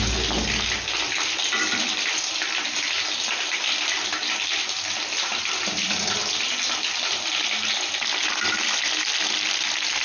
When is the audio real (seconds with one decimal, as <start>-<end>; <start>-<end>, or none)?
0.0-10.0